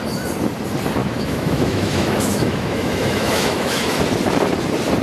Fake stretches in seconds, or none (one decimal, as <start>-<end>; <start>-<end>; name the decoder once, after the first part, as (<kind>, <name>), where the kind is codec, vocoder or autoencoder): 1.0-4.0 (autoencoder, DAC-VAE)